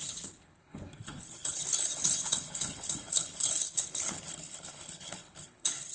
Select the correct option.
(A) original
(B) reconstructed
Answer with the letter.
B